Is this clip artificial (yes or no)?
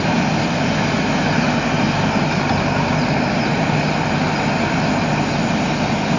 no